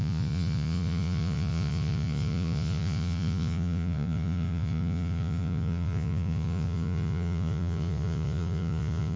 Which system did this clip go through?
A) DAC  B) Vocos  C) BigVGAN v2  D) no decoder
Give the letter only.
B